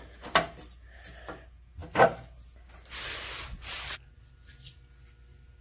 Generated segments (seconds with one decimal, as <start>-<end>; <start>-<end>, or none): none